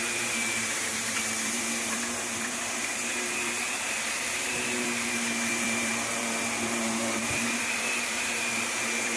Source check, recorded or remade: remade